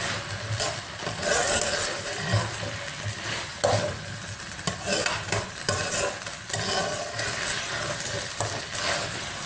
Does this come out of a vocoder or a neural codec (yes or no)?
no